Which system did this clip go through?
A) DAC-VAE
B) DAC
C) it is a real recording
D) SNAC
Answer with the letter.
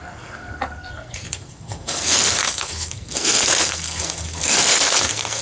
D